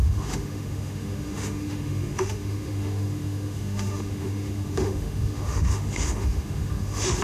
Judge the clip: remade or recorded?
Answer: remade